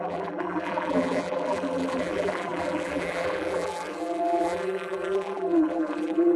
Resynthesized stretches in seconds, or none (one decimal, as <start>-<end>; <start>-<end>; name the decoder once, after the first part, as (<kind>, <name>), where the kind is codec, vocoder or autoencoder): 0.0-6.4 (vocoder, BigVGAN v2)

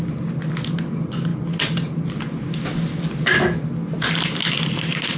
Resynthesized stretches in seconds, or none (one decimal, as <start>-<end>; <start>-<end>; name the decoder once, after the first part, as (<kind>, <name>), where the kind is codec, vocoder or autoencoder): none

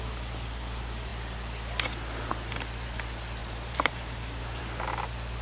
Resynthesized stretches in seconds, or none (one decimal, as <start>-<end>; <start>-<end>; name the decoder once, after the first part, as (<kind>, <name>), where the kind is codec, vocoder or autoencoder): 3.4-4.6 (vocoder, BigVGAN v2)